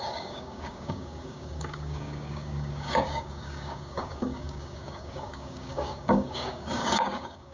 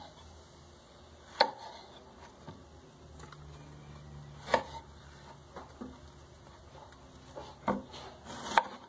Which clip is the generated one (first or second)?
first